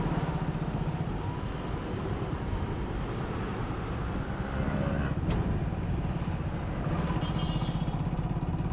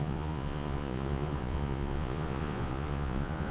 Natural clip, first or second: first